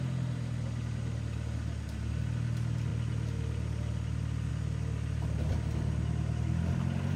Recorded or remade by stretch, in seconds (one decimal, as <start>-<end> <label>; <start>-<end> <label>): 0.0-7.2 recorded